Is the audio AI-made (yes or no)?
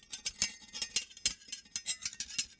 no